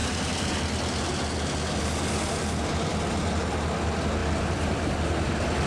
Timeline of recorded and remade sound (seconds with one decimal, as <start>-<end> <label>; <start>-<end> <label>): 0.0-4.2 recorded; 4.2-4.9 remade; 4.9-5.7 recorded

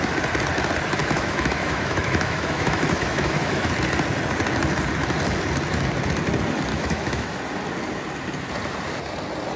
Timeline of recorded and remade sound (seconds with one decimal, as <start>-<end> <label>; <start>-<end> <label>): 0.0-1.0 recorded; 1.0-3.7 remade; 3.7-6.7 recorded; 6.7-7.4 remade; 7.4-9.6 recorded

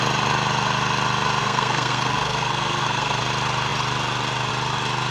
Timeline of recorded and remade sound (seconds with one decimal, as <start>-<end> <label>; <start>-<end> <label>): 0.0-1.4 recorded; 1.4-3.2 remade; 3.2-5.1 recorded

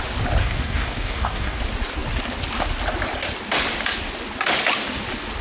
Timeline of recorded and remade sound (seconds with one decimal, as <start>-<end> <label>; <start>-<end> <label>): 0.0-0.4 recorded; 0.4-1.6 remade; 1.6-5.4 recorded

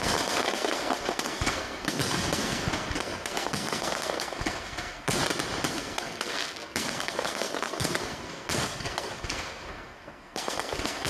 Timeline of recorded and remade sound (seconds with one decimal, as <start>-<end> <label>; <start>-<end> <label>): 0.0-5.2 remade; 5.2-5.7 recorded; 5.7-11.1 remade

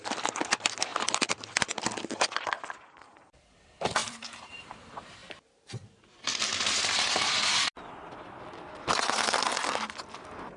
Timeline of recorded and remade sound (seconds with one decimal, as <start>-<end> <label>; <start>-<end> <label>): 0.0-0.9 recorded; 0.9-2.4 remade; 2.4-4.0 recorded; 4.0-4.5 remade; 4.5-5.2 recorded; 5.2-6.4 remade; 6.4-10.6 recorded